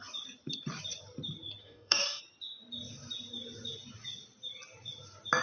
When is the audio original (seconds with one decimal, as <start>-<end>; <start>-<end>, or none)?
0.0-1.6; 2.2-5.4